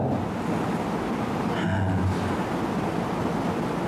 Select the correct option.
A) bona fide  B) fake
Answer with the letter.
A